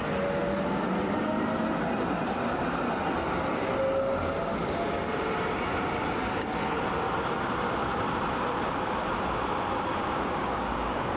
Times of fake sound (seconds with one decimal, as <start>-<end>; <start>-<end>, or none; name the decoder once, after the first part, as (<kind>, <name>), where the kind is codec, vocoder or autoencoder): 10.0-11.2 (codec, DAC)